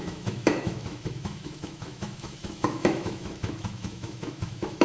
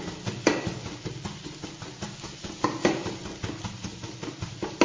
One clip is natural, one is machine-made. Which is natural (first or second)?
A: second